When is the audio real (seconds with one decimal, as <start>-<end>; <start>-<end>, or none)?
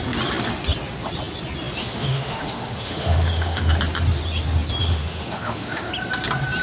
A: 0.0-1.8; 3.7-4.8; 5.9-6.6